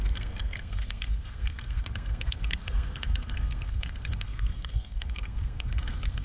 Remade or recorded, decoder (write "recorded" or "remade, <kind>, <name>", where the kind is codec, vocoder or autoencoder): remade, codec, SNAC